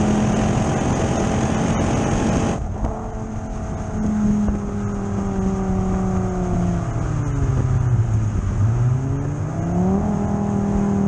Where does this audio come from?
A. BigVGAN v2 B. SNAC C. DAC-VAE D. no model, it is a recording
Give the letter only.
D